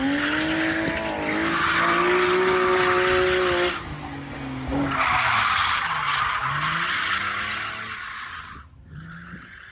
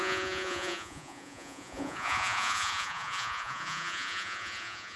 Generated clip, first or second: second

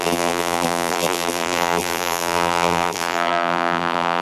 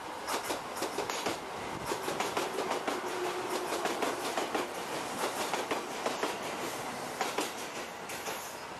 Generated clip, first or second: first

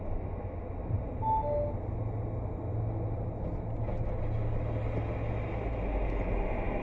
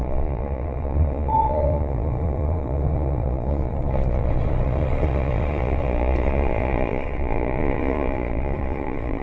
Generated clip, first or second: second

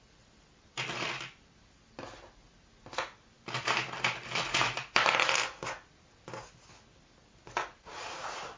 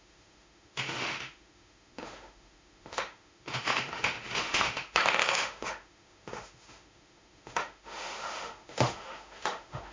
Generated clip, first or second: second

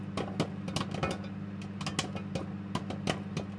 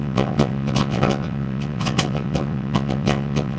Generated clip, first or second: second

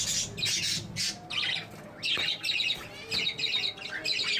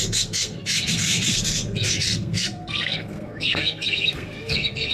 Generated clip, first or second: second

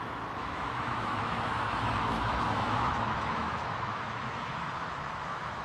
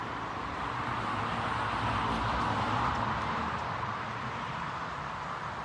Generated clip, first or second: first